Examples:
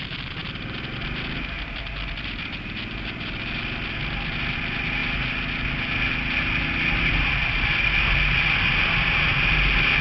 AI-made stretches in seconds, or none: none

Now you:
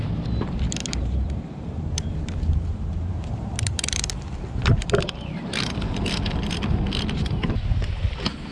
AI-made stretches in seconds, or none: 0.8-5.0 (vocoder, BigVGAN v2)

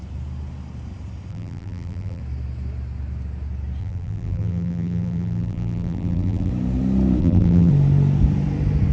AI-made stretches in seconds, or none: 1.3-2.2 (vocoder, BigVGAN v2); 3.8-6.5; 7.2-7.7

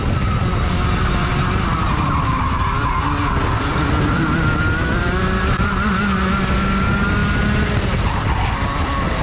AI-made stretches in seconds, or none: none

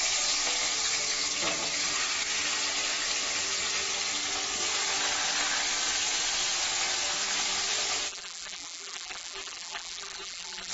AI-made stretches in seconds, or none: 8.1-10.7 (vocoder, BigVGAN v2)

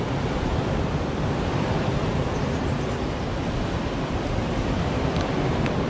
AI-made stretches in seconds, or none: 0.5-2.2 (vocoder, BigVGAN v2)